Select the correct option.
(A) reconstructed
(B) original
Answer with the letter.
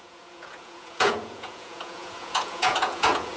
A